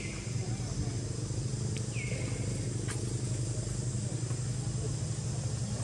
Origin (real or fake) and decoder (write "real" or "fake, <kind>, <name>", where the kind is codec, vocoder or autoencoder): real